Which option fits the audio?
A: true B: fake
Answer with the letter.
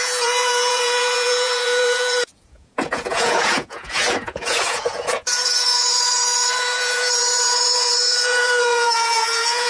B